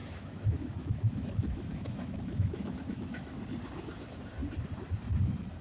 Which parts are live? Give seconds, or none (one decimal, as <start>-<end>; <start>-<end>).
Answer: 3.4-5.6